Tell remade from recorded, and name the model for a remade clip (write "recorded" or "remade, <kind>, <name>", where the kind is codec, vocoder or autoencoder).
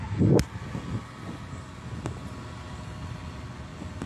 recorded